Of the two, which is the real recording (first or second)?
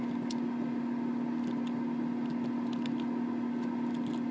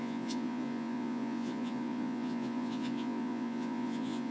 first